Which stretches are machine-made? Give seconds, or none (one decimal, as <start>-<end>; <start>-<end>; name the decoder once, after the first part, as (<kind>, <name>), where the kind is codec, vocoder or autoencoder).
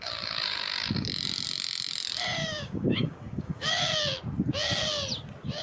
2.4-3.8 (codec, DAC)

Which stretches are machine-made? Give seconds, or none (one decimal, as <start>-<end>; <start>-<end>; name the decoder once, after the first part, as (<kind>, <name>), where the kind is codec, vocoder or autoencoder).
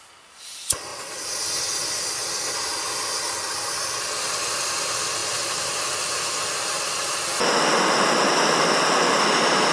none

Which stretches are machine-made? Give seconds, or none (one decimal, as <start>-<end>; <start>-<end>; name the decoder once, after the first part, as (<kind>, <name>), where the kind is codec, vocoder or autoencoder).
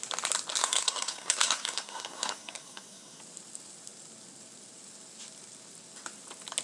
0.6-3.2 (codec, SNAC)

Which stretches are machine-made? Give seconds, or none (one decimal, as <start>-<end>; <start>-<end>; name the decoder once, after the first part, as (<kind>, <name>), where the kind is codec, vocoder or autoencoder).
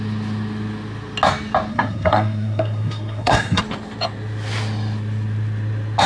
1.7-3.6 (codec, SNAC)